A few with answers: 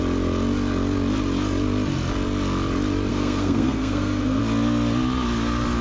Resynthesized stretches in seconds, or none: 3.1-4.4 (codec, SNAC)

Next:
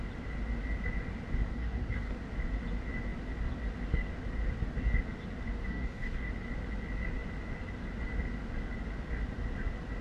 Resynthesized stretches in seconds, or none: 1.5-2.2 (codec, DAC); 5.6-6.3

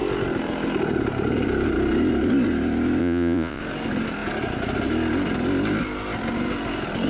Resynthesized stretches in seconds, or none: 3.0-3.6 (vocoder, Vocos)

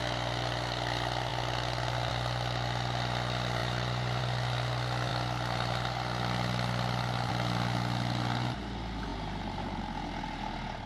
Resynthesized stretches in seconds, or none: 3.6-4.2 (vocoder, BigVGAN v2); 9.1-9.8

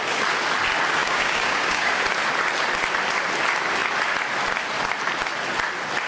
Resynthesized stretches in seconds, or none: 1.0-2.0 (codec, DAC)

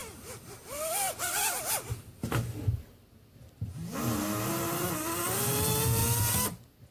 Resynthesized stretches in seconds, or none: none

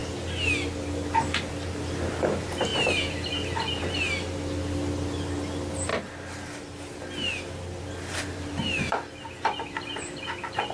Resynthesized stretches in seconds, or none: none

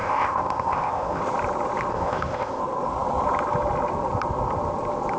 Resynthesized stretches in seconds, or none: 0.0-1.2 (codec, ZipCodec); 1.9-2.6